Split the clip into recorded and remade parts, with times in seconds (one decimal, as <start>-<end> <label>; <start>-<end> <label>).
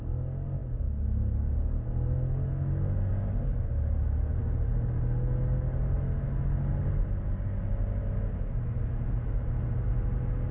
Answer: 0.0-10.5 recorded